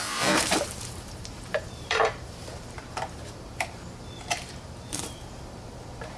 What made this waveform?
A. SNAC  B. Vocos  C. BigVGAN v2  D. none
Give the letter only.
C